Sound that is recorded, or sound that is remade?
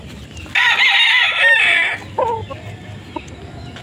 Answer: recorded